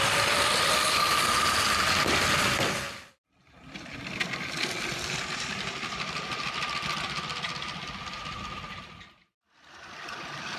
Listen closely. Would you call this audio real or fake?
real